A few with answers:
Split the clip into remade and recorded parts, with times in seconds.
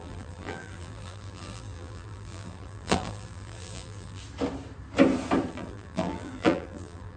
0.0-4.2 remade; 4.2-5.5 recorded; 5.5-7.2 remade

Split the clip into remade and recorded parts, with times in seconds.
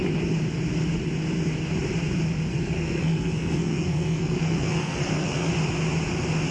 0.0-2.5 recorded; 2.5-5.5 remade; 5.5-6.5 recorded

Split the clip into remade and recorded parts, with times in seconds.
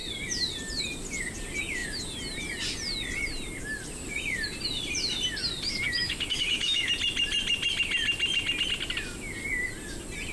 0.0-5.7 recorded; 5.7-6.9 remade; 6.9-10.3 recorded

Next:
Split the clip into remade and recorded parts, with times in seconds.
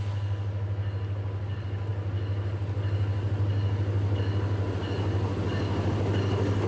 0.0-6.7 recorded